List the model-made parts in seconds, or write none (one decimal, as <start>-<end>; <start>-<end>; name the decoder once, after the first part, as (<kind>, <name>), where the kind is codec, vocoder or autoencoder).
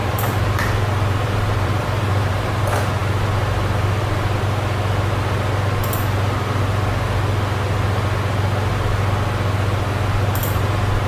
0.0-2.6 (vocoder, BigVGAN v2)